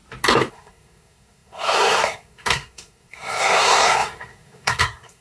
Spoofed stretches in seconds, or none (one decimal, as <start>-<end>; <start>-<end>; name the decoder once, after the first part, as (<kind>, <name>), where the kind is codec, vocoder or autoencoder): 0.5-5.2 (codec, SNAC)